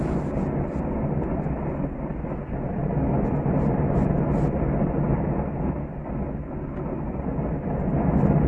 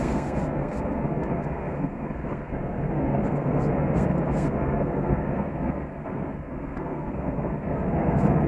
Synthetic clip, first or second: second